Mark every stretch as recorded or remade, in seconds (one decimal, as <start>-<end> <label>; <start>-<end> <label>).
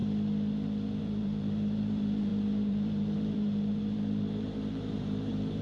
0.0-1.0 recorded; 1.0-5.6 remade